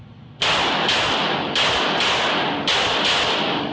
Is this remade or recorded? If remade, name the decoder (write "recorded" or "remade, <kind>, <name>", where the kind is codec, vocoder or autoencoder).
recorded